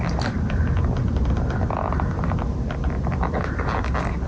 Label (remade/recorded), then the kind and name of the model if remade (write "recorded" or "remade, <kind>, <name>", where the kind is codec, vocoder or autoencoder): recorded